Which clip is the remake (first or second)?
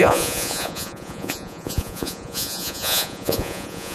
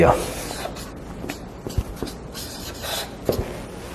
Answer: first